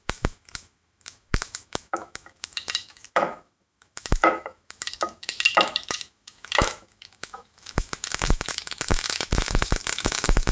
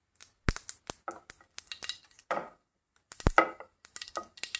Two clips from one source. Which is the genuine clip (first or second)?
second